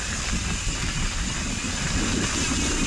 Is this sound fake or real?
real